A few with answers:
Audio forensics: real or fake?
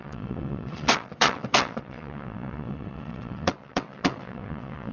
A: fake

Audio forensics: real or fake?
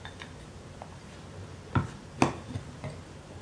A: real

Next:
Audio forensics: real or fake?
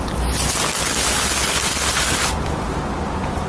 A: real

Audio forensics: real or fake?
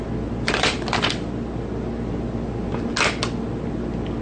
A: real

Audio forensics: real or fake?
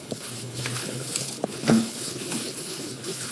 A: fake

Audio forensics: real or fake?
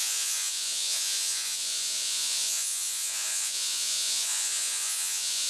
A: fake